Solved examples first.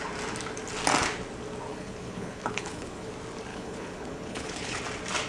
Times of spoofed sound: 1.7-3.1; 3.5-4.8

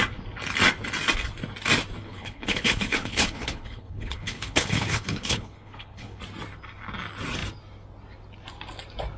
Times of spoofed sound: 2.0-6.2